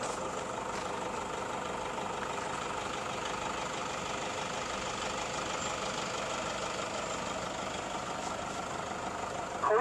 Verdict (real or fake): real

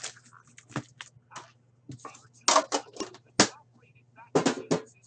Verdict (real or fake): real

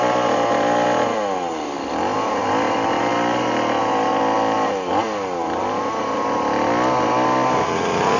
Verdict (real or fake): real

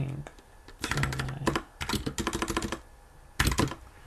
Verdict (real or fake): real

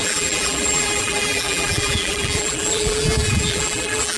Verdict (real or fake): fake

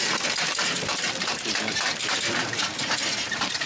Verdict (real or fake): fake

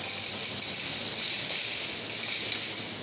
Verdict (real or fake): real